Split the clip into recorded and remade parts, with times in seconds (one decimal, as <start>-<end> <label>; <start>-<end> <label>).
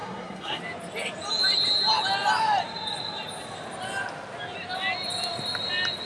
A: 0.0-0.6 remade; 0.6-6.1 recorded